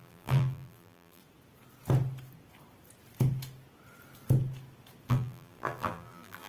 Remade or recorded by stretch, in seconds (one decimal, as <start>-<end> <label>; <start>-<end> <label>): 0.0-1.2 remade; 1.2-5.1 recorded; 5.1-6.5 remade